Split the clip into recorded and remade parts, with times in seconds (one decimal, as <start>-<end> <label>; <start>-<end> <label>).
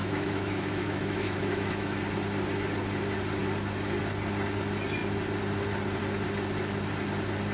0.0-2.0 remade; 2.0-7.5 recorded